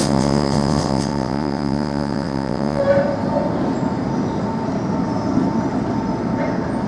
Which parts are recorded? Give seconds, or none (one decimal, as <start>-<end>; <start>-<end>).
2.8-6.9